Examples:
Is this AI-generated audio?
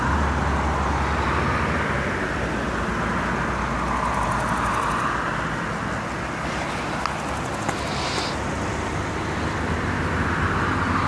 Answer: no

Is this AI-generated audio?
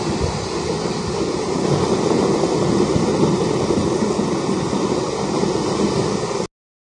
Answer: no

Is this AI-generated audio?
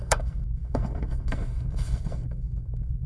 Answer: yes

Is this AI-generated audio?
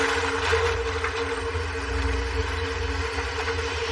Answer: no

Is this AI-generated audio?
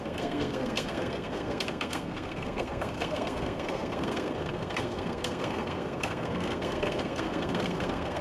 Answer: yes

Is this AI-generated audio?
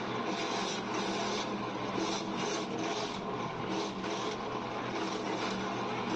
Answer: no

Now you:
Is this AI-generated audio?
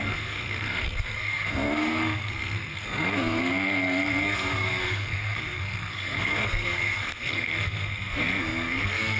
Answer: yes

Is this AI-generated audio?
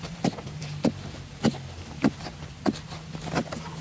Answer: no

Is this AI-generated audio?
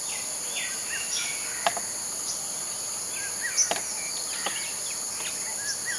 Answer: no